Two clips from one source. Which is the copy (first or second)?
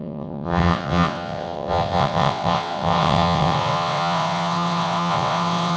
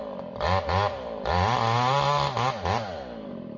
first